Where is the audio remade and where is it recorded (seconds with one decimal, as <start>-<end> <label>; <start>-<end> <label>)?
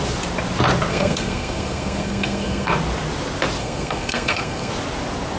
0.0-0.9 recorded; 0.9-2.7 remade; 2.7-3.6 recorded; 3.6-4.7 remade; 4.7-5.4 recorded